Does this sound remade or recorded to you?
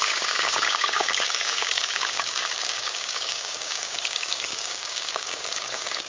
remade